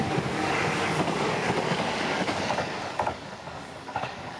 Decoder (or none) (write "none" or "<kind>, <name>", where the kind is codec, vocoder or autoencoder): codec, DAC